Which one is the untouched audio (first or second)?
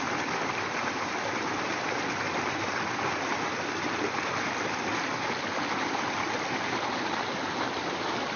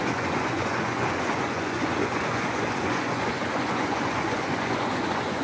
first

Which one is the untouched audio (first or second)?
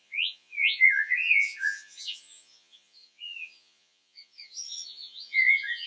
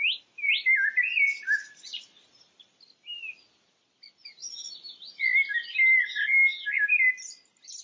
second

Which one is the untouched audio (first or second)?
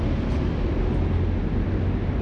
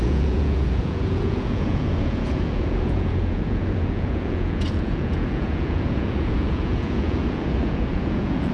first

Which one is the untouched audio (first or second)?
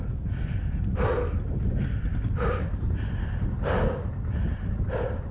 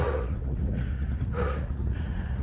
first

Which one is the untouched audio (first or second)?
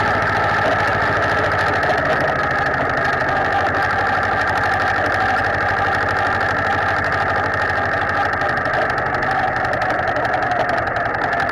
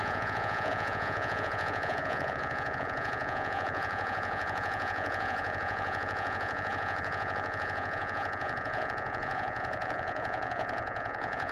first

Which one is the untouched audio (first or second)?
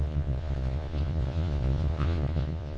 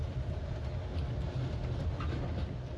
second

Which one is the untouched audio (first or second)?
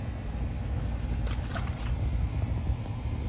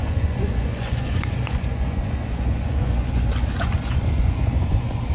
first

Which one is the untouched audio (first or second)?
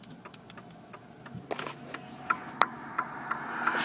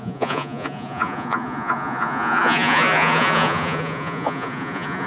first